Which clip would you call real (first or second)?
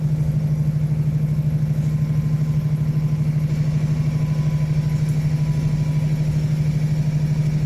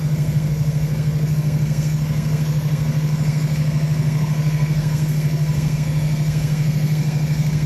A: first